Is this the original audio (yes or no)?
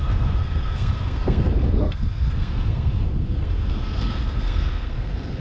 no